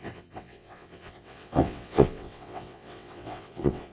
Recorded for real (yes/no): no